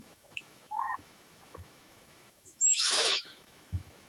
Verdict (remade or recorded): remade